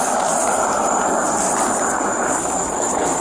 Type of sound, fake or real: real